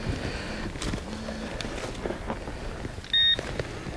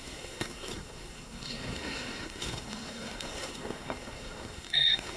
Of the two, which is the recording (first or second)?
first